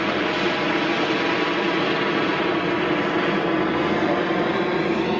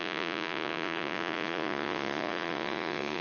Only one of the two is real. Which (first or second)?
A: first